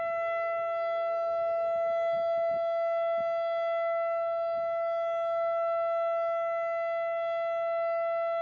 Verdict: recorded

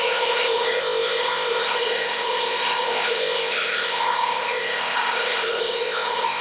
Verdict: remade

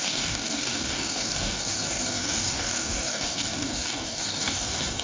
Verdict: remade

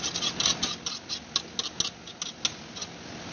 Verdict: recorded